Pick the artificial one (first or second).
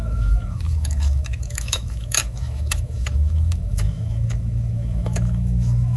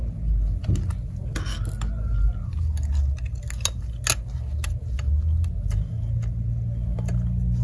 first